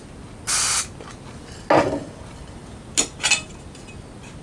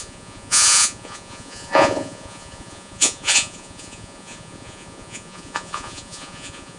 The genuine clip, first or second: first